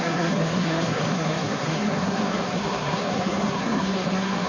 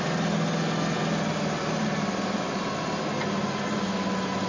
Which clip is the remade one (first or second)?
first